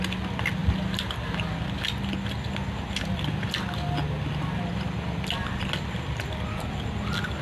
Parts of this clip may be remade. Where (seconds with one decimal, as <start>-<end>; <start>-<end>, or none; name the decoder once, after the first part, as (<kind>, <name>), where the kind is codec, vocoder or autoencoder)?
none